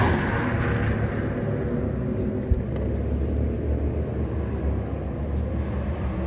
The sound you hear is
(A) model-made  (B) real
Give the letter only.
B